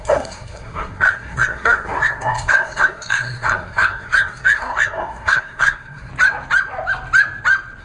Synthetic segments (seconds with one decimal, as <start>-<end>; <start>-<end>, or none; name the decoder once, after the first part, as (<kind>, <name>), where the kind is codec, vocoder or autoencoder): 0.0-6.1 (codec, SNAC)